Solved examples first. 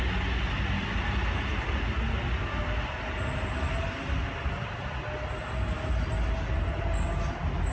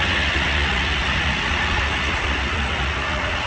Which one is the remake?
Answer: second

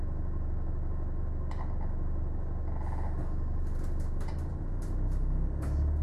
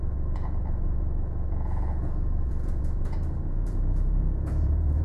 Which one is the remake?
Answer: second